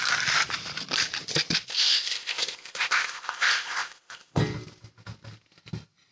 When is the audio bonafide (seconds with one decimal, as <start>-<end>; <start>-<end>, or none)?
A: 0.0-1.7; 4.4-6.1